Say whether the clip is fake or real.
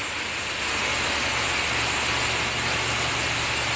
real